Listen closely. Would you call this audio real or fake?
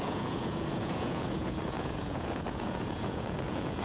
fake